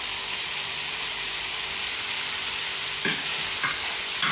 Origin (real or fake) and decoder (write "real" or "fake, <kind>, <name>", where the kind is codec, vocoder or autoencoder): fake, vocoder, BigVGAN v2